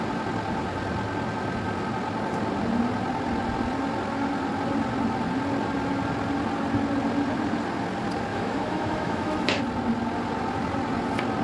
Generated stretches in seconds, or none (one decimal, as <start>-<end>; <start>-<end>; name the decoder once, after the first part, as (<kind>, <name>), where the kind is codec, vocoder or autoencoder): 8.3-9.6 (autoencoder, DAC-VAE)